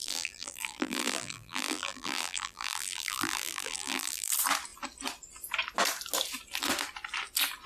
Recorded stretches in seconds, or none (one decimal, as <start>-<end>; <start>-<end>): 4.3-7.7